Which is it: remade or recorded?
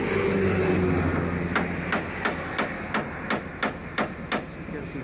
recorded